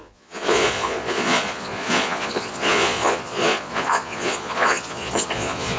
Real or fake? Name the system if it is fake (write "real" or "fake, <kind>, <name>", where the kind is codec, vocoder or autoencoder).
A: fake, vocoder, Vocos